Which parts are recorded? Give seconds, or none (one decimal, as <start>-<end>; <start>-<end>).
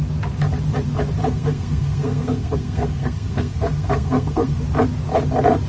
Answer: 0.0-1.2; 4.6-5.7